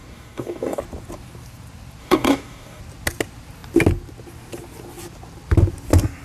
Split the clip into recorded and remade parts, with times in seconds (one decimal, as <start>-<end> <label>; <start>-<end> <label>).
0.0-0.8 remade; 0.8-2.0 recorded; 2.0-2.8 remade; 2.8-6.2 recorded